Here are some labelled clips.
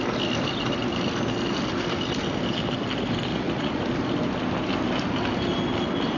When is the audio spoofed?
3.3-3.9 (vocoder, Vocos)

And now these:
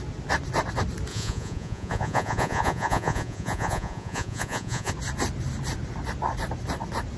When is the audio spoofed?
1.1-4.9 (vocoder, Vocos)